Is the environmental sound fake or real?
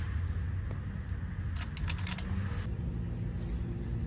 real